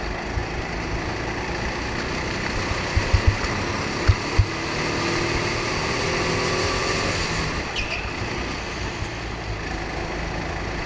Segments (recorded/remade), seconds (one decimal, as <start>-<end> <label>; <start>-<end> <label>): 0.0-10.9 recorded